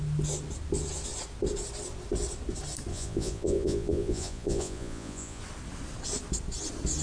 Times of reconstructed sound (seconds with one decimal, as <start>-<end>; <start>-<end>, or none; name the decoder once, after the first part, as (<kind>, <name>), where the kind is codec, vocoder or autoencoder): 2.9-5.4 (vocoder, Vocos)